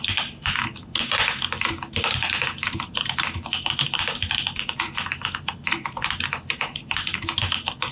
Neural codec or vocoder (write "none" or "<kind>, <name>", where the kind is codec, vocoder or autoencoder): none